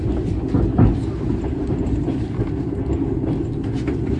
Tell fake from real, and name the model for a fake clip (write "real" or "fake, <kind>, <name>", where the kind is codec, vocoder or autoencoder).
real